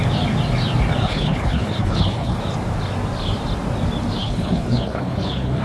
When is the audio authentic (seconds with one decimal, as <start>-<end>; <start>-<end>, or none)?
0.0-1.0; 2.4-4.2